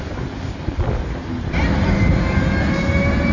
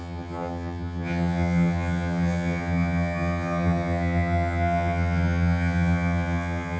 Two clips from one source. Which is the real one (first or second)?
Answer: first